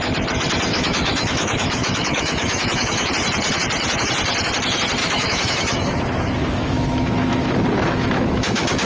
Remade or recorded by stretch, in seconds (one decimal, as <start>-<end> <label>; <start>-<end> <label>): 0.0-0.7 recorded; 0.7-3.1 remade; 3.1-5.0 recorded; 5.0-8.9 remade